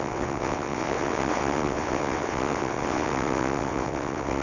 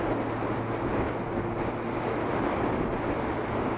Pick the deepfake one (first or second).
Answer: first